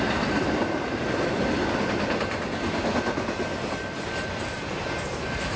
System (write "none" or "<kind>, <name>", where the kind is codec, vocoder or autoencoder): none